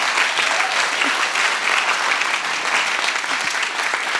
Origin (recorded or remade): recorded